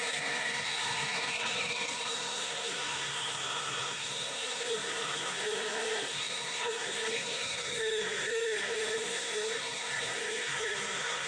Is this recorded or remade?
remade